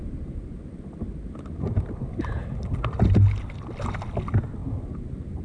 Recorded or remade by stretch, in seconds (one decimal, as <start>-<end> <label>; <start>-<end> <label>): 0.0-5.4 recorded